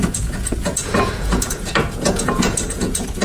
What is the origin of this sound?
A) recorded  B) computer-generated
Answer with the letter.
B